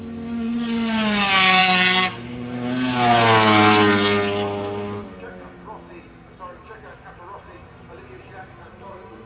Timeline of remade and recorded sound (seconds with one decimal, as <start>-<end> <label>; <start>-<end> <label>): 0.0-9.3 recorded